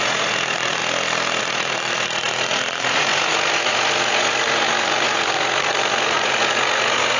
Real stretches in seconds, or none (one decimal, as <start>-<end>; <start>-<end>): 0.8-1.4